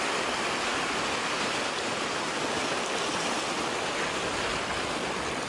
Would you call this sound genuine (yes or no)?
yes